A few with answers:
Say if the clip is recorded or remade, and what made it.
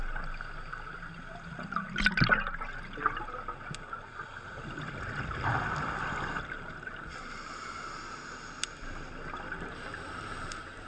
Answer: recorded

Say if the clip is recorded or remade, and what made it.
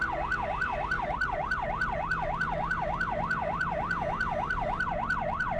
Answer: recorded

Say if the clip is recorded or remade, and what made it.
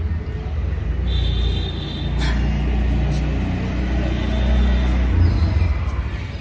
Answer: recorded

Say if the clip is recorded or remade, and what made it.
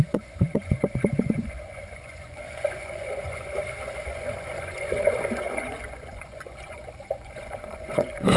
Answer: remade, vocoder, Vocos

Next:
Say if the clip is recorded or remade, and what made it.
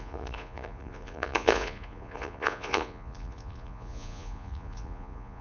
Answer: remade, vocoder, Vocos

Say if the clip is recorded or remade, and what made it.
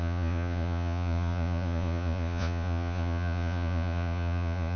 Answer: remade, vocoder, Vocos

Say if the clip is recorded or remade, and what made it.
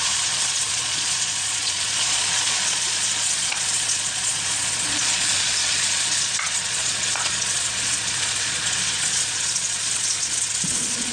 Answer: remade, vocoder, Vocos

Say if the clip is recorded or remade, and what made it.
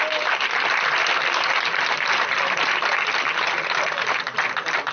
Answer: recorded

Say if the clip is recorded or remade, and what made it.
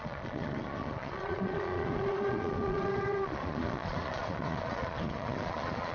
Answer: remade, vocoder, Vocos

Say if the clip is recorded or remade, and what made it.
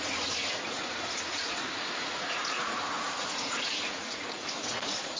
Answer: remade, vocoder, Vocos